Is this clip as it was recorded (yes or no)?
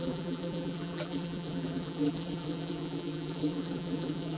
no